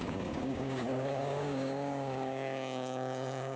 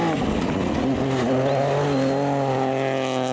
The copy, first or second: first